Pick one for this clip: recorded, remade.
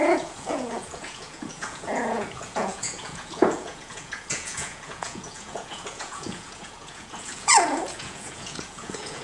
remade